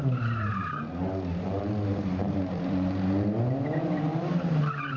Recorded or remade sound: remade